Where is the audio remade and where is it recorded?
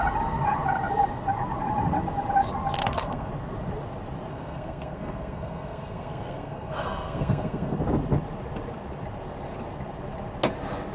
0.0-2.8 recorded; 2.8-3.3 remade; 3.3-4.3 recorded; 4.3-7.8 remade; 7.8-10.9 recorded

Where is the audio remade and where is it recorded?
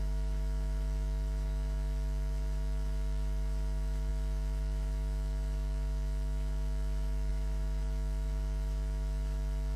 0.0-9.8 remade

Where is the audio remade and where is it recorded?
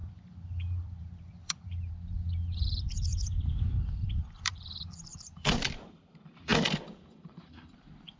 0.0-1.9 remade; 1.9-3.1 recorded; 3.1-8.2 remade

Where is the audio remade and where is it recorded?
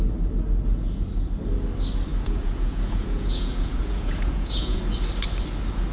0.0-2.1 recorded; 2.1-4.8 remade; 4.8-5.9 recorded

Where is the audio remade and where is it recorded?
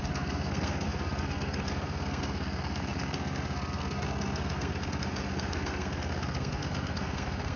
0.0-7.6 remade